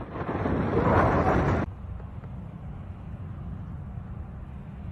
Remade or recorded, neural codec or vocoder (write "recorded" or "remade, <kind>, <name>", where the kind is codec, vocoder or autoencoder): recorded